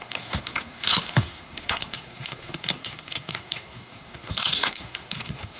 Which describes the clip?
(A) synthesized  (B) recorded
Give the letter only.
A